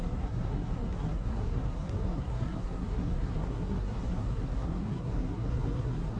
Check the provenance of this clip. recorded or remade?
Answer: remade